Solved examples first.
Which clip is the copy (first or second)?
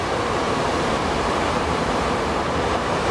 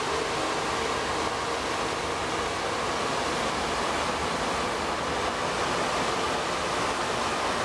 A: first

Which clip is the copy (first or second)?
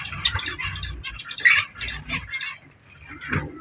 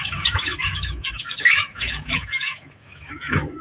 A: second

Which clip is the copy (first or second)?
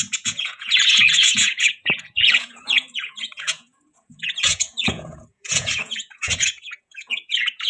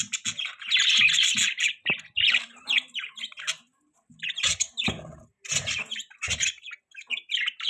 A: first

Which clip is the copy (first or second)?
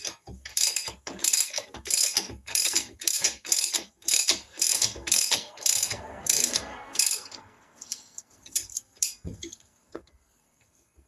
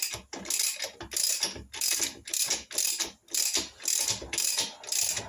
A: first